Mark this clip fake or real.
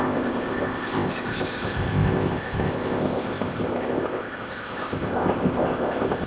fake